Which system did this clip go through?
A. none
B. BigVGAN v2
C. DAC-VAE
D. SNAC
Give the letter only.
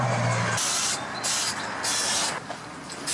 A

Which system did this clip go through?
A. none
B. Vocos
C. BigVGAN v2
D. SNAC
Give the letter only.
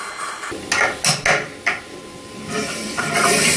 A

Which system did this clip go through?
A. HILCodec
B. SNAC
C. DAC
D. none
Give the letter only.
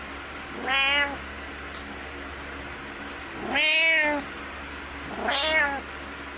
D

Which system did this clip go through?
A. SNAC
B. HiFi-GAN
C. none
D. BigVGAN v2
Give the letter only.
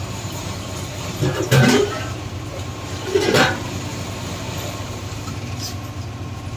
D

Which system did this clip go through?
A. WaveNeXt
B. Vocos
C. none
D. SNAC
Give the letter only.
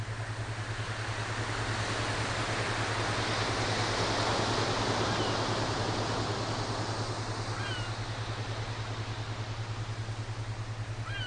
C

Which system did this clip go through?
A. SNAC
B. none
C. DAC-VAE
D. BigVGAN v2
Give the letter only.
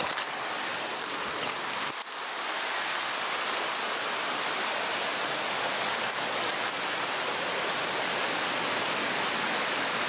B